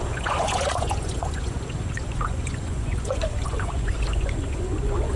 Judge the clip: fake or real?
fake